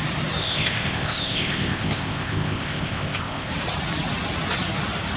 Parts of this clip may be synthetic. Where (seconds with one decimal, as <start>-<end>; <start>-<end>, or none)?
0.4-3.5

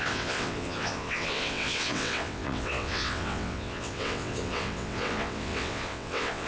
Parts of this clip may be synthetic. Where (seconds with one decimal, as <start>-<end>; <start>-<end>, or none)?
0.0-6.5

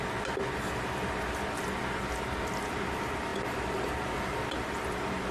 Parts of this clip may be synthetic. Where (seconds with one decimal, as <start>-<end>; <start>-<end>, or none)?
none

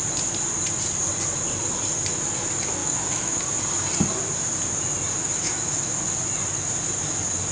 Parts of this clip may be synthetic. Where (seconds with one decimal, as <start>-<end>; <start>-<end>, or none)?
2.8-3.4; 5.2-5.9